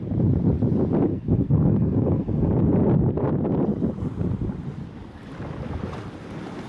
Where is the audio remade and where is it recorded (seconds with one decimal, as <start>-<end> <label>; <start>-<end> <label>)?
0.0-1.1 recorded; 1.1-2.5 remade; 2.5-6.7 recorded